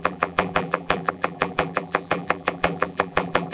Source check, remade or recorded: remade